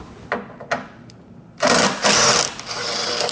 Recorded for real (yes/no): yes